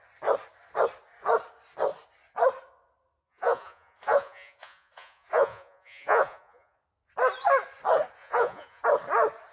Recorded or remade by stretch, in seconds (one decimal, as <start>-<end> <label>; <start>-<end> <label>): 0.0-3.2 recorded; 3.2-6.8 remade; 6.8-8.2 recorded; 8.2-8.8 remade; 8.8-9.5 recorded